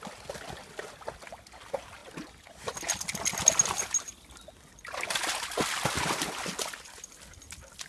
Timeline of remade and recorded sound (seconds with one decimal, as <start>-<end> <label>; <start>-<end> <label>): 0.0-7.9 recorded